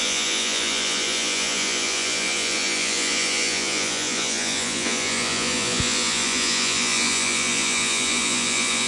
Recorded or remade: remade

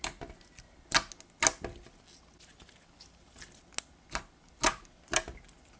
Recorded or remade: recorded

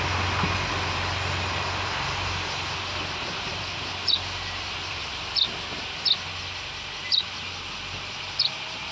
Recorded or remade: recorded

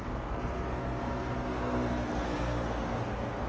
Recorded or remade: remade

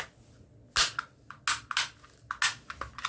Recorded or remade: recorded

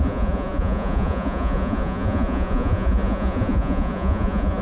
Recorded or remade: remade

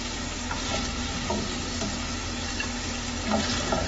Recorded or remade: recorded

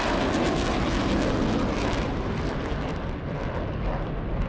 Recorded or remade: recorded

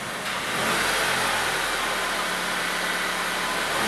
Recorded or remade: recorded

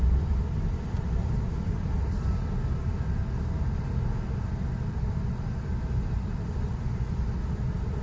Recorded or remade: recorded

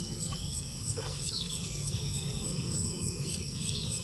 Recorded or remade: remade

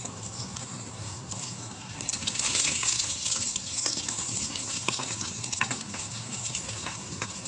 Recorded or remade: remade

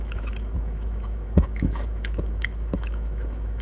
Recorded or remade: remade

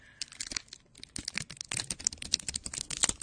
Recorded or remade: recorded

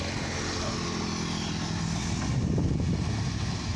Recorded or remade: recorded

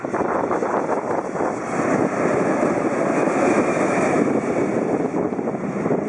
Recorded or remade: recorded